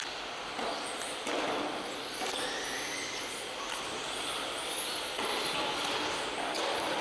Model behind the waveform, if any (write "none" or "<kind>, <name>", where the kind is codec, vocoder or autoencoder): none